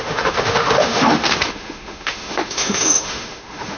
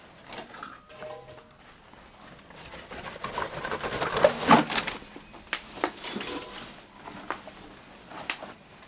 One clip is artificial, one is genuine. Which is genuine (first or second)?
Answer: second